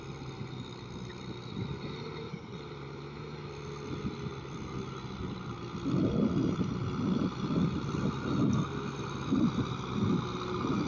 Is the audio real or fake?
real